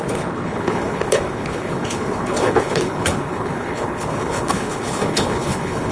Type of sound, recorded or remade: remade